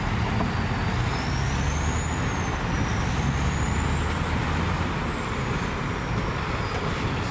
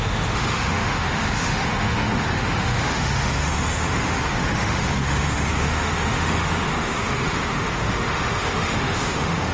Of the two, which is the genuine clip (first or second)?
first